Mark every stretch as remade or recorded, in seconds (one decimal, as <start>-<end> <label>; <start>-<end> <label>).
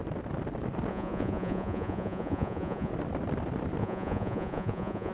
0.0-0.9 recorded; 0.9-2.9 remade; 2.9-3.8 recorded; 3.8-5.1 remade